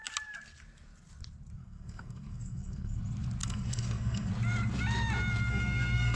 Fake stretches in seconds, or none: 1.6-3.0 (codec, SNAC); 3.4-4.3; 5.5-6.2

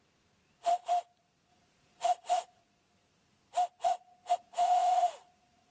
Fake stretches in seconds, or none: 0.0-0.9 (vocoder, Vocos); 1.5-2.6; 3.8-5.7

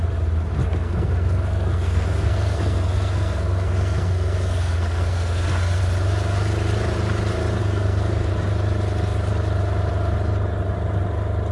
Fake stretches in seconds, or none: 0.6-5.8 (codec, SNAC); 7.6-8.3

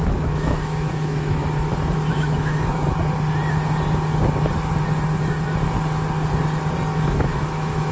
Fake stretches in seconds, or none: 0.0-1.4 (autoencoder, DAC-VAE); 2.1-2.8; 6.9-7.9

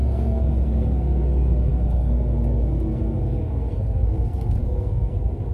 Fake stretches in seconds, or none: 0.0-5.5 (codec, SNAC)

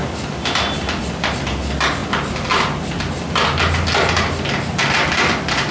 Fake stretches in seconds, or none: none